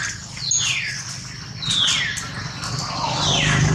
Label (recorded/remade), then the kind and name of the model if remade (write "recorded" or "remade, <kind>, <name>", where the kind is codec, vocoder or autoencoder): recorded